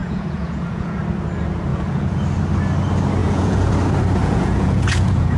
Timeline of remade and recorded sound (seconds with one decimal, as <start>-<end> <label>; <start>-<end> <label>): 0.0-1.0 remade; 1.0-1.7 recorded; 1.7-2.2 remade; 2.2-3.2 recorded; 3.2-3.7 remade; 3.7-4.2 recorded; 4.2-5.4 remade